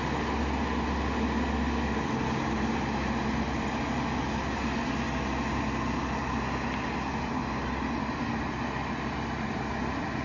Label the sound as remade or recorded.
recorded